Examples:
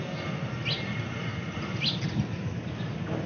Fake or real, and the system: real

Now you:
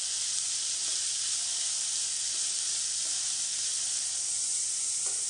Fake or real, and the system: real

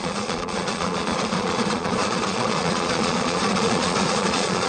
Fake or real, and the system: fake, vocoder, Vocos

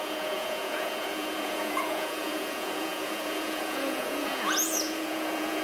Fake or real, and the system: fake, vocoder, Vocos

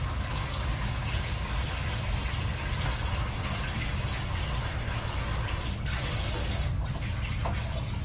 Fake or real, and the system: real